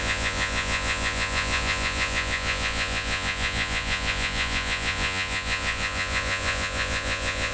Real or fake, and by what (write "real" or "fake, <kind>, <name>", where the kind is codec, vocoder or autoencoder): fake, vocoder, Vocos